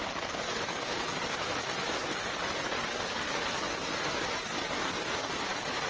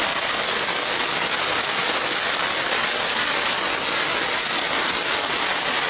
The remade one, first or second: first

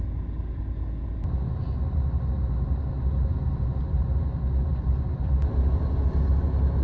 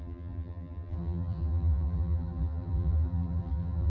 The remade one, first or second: second